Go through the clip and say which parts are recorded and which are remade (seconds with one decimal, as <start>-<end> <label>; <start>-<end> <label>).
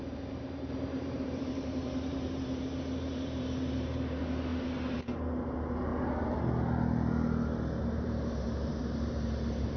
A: 0.0-5.9 remade; 5.9-7.8 recorded; 7.8-9.8 remade